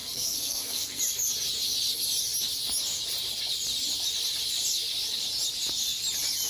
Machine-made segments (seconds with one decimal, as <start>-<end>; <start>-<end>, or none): 0.0-1.0

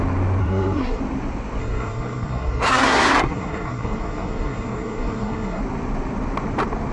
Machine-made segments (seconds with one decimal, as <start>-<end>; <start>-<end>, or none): 0.4-1.0; 1.6-5.6